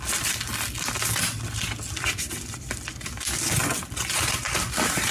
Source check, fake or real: real